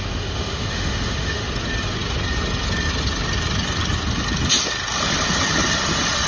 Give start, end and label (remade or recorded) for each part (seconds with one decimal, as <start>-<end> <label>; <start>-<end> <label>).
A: 0.0-1.5 remade; 1.5-6.3 recorded